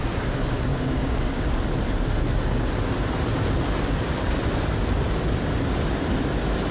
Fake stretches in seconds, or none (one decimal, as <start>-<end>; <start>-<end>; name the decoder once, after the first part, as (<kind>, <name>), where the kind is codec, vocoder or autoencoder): 0.7-1.4 (codec, DAC)